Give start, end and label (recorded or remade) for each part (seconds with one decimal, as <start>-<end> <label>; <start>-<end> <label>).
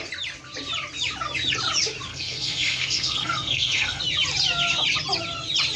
0.0-2.1 recorded; 2.1-4.0 remade; 4.0-5.8 recorded